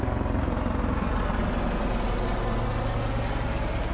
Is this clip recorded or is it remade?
recorded